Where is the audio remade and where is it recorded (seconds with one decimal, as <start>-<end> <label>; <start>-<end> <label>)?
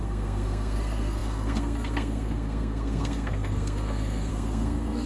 0.0-5.1 remade